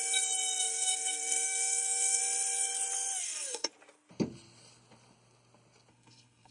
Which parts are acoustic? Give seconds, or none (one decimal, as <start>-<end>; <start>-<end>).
0.0-0.6; 2.2-3.2; 3.7-5.9